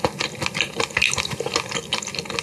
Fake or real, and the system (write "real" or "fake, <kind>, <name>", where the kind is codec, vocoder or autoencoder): real